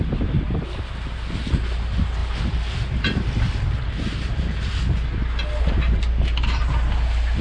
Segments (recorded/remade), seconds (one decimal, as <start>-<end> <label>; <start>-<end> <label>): 0.0-7.4 recorded